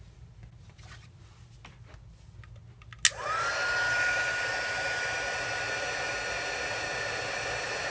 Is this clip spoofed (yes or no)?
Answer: no